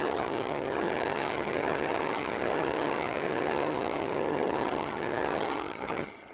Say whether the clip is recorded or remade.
remade